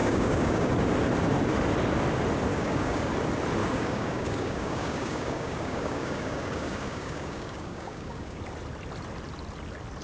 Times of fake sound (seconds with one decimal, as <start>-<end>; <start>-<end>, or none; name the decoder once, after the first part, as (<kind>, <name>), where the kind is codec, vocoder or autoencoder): 0.0-0.7 (codec, DAC); 2.5-3.1; 3.6-8.4